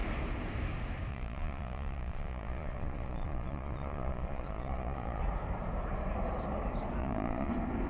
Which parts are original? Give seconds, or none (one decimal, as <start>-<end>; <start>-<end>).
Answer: 0.0-1.1; 5.2-7.0; 7.5-7.9